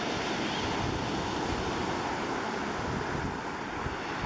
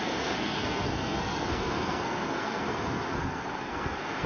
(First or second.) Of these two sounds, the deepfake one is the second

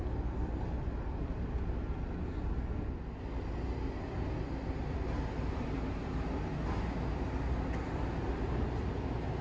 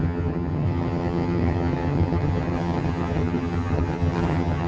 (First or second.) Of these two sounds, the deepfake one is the second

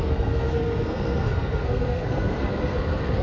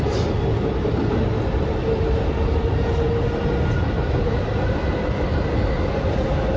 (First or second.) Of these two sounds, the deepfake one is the first